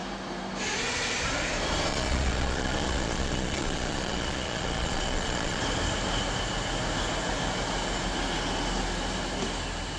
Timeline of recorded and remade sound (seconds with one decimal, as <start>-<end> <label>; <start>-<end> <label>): 0.0-1.9 recorded; 1.9-5.6 remade; 5.6-10.0 recorded